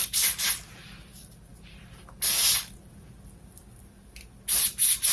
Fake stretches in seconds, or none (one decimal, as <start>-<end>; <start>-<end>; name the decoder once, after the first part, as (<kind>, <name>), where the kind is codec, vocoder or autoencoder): none